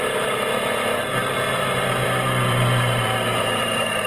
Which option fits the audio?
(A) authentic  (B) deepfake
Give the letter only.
B